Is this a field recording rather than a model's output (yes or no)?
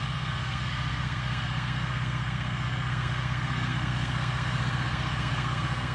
no